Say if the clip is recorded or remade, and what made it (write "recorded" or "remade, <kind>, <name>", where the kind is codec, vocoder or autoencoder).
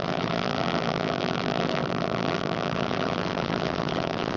remade, vocoder, BigVGAN v2